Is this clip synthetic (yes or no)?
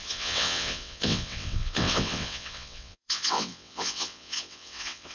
yes